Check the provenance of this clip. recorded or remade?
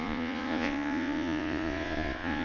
remade